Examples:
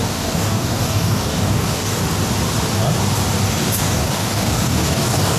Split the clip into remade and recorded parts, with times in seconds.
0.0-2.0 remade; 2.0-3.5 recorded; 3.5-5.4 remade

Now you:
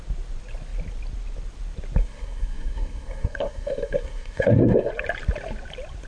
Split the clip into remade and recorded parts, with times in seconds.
0.0-2.0 recorded; 2.0-4.9 remade; 4.9-6.1 recorded

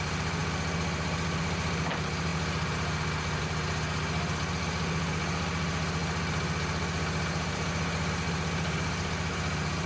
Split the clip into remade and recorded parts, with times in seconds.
0.0-9.9 recorded